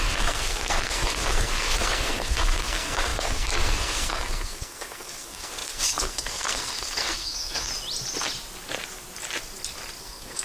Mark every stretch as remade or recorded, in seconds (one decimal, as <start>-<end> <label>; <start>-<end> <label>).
0.0-7.7 remade; 7.7-10.0 recorded; 10.0-10.4 remade